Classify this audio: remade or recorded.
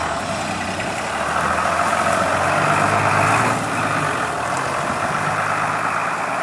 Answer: recorded